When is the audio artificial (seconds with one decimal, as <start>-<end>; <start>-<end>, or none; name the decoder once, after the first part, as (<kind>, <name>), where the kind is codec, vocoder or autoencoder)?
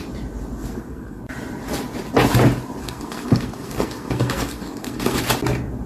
0.6-1.2 (codec, SNAC); 2.8-5.2